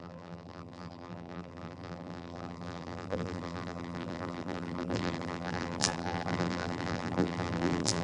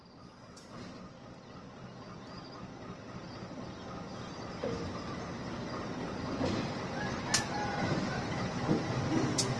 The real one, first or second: second